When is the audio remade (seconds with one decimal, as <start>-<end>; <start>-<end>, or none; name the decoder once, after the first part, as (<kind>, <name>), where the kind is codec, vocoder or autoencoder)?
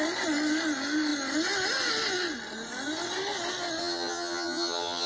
3.8-5.1 (vocoder, HiFi-GAN)